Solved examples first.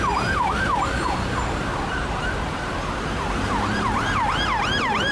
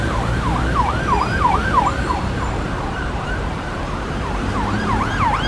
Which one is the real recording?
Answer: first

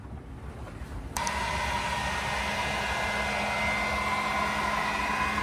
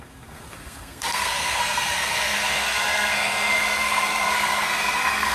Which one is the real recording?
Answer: first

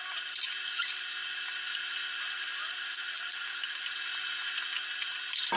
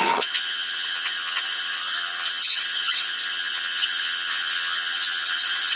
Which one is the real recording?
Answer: first